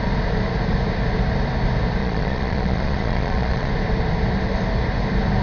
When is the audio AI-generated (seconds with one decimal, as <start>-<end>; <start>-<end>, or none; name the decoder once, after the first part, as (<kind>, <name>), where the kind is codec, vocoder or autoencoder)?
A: 2.0-3.7 (vocoder, Vocos)